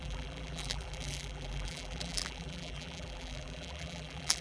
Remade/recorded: remade